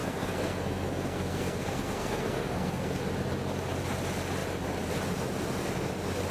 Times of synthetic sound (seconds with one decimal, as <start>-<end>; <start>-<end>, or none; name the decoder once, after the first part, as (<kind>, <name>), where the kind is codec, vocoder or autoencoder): 0.0-3.0 (codec, SNAC)